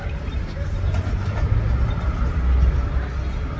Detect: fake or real real